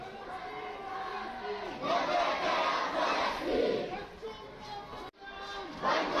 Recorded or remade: recorded